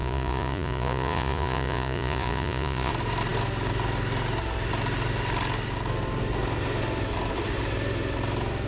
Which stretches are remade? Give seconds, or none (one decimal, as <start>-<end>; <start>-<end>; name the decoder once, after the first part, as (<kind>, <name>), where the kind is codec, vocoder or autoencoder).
0.0-2.9 (vocoder, Vocos)